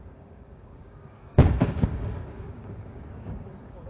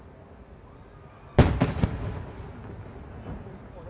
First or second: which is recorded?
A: second